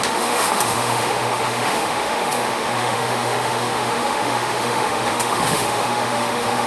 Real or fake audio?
fake